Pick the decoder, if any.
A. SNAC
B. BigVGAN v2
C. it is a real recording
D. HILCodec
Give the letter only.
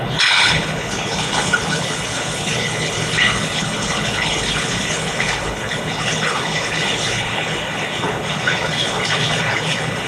D